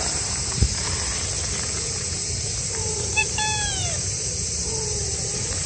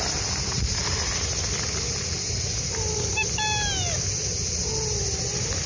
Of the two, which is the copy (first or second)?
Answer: first